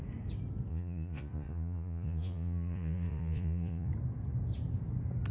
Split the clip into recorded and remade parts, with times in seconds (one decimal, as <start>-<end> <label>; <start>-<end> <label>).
0.0-0.7 recorded; 0.7-3.9 remade; 3.9-5.3 recorded